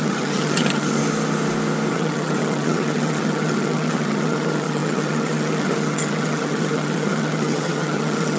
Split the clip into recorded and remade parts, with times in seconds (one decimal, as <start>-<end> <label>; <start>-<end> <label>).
0.0-1.0 remade; 1.0-1.9 recorded; 1.9-8.4 remade